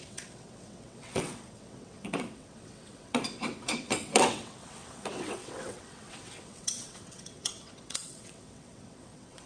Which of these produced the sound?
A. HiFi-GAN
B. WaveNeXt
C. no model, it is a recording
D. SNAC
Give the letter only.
B